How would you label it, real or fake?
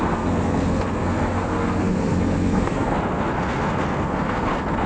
fake